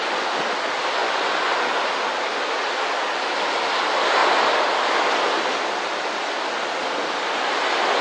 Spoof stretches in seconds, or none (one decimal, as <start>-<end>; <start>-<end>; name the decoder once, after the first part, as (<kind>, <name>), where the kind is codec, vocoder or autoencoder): 1.0-1.5 (vocoder, Vocos)